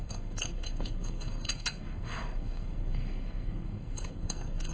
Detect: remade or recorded remade